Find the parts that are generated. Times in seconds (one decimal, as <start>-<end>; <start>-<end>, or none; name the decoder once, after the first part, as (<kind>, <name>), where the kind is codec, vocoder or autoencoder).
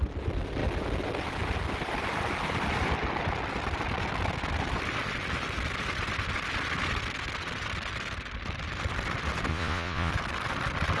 9.5-10.1 (vocoder, Vocos)